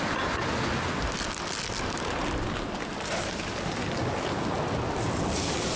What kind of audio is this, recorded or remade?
recorded